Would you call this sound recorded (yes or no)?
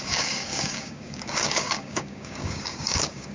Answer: no